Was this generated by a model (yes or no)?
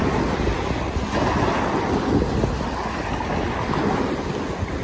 no